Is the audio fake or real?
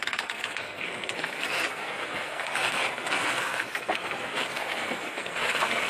fake